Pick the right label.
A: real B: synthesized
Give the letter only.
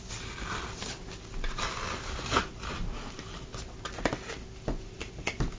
A